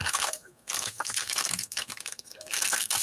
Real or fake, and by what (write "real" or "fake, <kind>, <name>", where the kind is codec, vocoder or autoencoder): fake, codec, SNAC